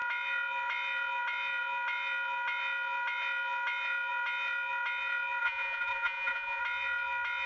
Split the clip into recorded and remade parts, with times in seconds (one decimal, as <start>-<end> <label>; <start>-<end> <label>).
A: 0.0-5.4 recorded; 5.4-6.6 remade; 6.6-7.5 recorded